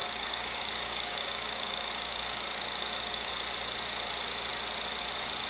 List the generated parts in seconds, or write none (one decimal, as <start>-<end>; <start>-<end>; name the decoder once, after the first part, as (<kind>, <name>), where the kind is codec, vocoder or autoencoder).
0.0-3.3 (codec, DAC)